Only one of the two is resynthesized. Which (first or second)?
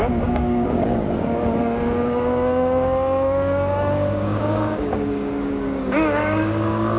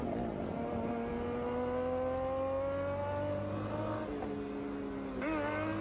first